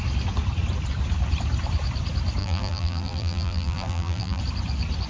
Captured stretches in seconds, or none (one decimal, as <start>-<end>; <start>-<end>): 0.0-2.4; 4.4-5.1